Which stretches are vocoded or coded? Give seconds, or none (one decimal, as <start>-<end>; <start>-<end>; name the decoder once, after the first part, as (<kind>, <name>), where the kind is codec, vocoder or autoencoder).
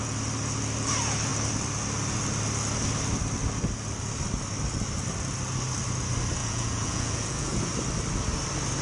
6.4-7.7 (vocoder, Vocos)